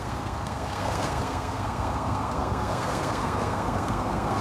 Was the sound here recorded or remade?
remade